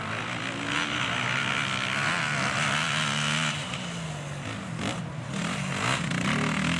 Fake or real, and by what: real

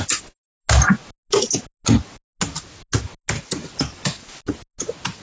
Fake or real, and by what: real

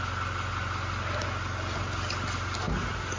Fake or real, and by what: real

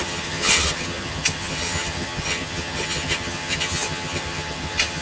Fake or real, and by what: fake, vocoder, HiFi-GAN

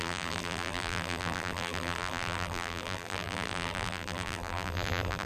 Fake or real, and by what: fake, vocoder, BigVGAN v2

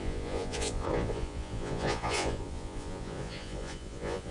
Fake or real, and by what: fake, vocoder, Vocos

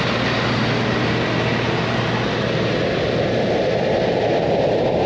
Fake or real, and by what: real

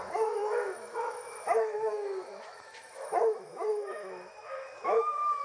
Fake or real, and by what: fake, autoencoder, DAC-VAE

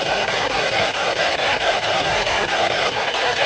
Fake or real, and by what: fake, codec, SNAC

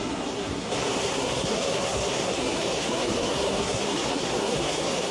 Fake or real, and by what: fake, codec, SNAC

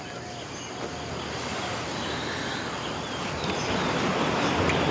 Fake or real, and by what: real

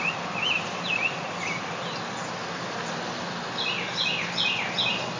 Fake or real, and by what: real